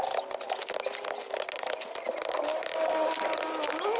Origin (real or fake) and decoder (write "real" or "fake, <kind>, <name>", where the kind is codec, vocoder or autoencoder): real